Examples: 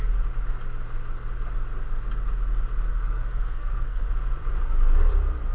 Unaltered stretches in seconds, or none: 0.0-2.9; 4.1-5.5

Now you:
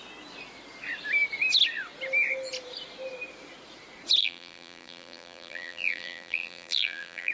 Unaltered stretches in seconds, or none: 0.0-4.2

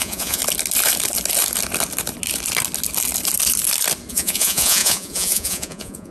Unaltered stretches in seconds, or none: 0.4-4.1

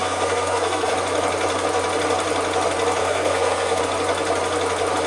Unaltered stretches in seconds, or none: 0.9-3.0; 3.8-5.1

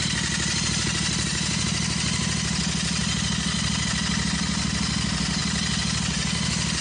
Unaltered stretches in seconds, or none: 0.0-6.8

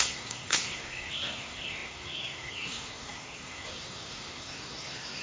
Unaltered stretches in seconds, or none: none